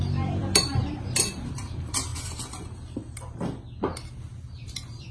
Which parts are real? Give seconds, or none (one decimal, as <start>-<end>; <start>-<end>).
0.0-5.1